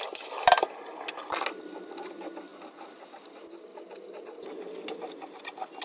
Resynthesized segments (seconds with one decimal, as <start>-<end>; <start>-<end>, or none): none